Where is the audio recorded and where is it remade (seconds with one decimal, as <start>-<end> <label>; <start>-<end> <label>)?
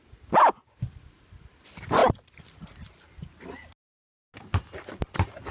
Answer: 0.0-5.5 recorded